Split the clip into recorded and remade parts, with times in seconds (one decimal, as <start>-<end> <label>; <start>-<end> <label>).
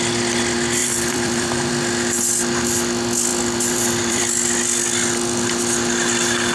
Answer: 0.0-0.8 recorded; 0.8-1.7 remade; 1.7-3.3 recorded; 3.3-4.2 remade; 4.2-6.5 recorded